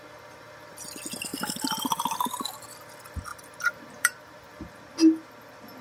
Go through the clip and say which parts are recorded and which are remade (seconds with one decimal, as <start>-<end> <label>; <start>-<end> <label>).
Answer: 0.0-1.3 recorded; 1.3-2.4 remade; 2.4-3.3 recorded; 3.3-4.5 remade; 4.5-5.8 recorded